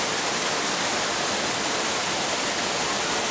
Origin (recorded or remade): recorded